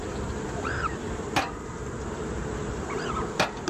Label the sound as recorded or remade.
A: recorded